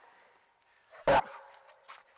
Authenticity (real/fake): real